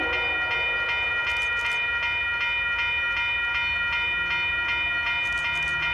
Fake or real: real